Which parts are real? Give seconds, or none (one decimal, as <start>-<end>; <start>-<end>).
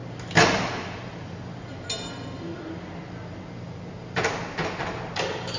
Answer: 0.0-5.6